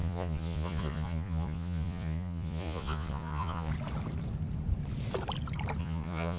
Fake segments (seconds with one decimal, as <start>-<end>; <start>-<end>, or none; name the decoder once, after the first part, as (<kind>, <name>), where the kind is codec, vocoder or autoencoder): 0.0-3.7 (vocoder, Vocos); 5.8-6.4